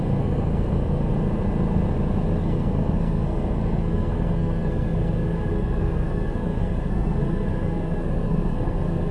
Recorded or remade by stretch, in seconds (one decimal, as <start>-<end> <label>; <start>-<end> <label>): 0.0-1.1 remade; 1.1-2.4 recorded; 2.4-9.1 remade